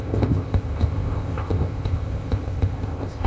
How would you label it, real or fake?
fake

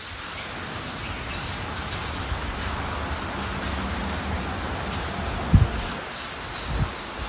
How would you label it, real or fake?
real